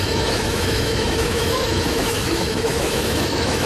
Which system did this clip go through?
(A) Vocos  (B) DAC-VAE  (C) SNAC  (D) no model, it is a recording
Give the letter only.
B